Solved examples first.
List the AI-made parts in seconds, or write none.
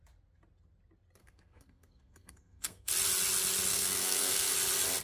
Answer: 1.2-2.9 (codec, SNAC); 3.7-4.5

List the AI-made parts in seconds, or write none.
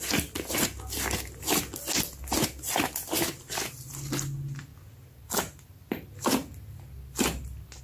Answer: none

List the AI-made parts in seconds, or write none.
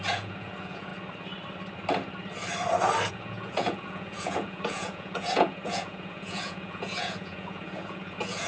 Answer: 0.0-0.9 (vocoder, Vocos); 3.1-8.5